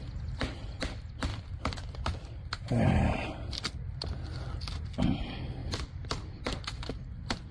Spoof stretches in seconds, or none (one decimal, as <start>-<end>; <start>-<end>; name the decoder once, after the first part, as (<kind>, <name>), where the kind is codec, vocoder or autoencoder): 1.3-3.0 (vocoder, BigVGAN v2)